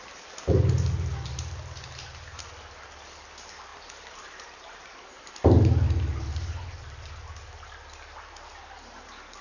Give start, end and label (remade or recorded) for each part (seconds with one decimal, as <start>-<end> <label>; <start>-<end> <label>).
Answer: 0.0-3.7 recorded; 3.7-5.3 remade; 5.3-8.5 recorded; 8.5-9.4 remade

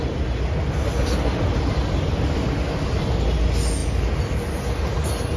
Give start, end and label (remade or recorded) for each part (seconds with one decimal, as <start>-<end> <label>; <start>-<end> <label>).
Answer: 0.0-5.4 recorded

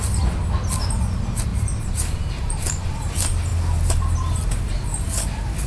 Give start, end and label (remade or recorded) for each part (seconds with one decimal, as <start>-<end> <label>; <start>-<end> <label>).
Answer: 0.0-1.5 recorded; 1.5-2.8 remade; 2.8-5.7 recorded